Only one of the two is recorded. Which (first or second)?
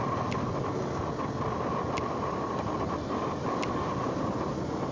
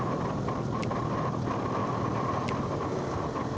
first